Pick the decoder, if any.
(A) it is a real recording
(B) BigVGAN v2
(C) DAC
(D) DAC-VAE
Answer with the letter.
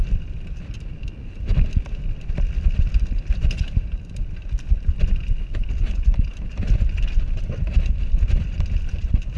A